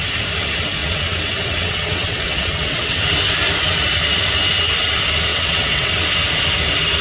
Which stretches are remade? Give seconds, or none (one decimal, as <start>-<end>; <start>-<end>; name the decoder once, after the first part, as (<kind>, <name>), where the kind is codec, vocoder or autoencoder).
0.8-3.0 (vocoder, WaveNeXt); 5.3-5.9